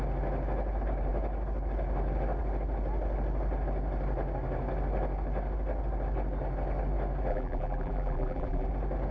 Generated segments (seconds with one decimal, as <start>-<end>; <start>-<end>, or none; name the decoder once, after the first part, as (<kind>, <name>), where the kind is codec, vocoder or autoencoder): 7.3-8.7 (vocoder, BigVGAN v2)